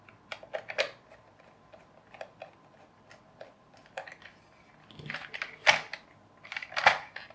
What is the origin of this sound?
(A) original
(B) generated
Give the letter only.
A